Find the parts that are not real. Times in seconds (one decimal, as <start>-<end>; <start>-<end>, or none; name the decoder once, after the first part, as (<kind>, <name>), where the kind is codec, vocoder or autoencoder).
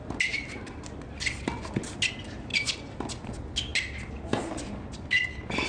2.5-3.3 (vocoder, BigVGAN v2)